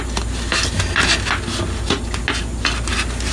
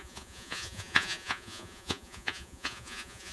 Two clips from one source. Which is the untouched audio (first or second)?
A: first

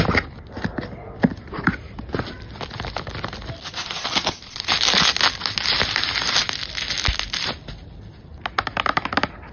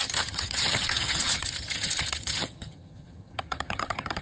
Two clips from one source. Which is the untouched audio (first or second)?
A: first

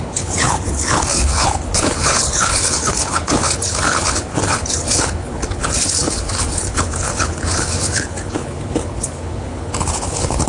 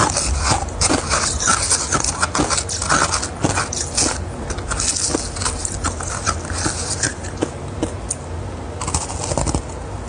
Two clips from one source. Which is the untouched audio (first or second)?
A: second